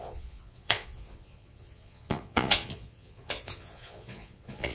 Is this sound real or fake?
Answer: fake